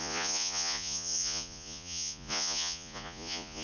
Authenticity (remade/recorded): remade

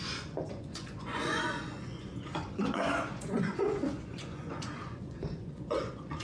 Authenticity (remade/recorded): remade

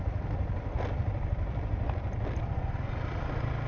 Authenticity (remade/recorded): recorded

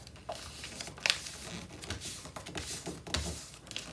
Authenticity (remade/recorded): recorded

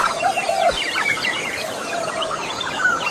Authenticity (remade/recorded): recorded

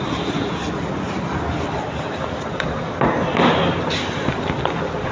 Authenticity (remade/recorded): recorded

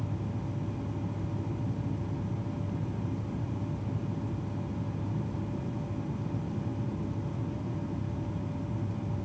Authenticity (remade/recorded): recorded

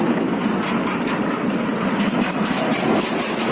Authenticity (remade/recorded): recorded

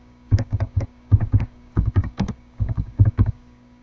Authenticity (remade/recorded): remade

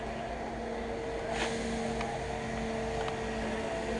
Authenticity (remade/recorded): recorded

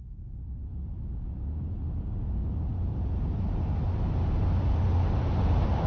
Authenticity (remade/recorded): remade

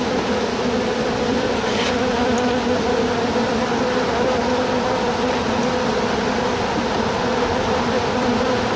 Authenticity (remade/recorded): recorded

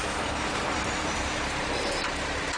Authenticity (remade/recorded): remade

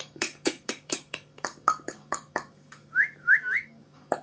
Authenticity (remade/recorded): remade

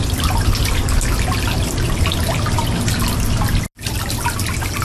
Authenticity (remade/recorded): recorded